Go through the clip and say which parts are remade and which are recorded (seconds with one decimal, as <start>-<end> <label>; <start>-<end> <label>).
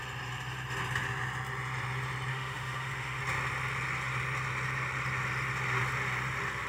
0.0-2.3 recorded; 2.3-3.2 remade; 3.2-6.7 recorded